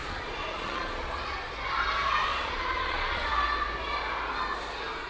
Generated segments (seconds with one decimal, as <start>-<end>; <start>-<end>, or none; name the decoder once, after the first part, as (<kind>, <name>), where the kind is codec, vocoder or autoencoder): 0.0-1.5 (vocoder, Vocos); 2.3-3.3